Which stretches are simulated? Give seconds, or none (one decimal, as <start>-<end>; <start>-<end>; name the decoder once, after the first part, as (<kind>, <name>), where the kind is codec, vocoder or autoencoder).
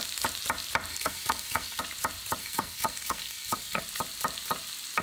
0.9-1.8 (codec, SNAC); 2.4-3.8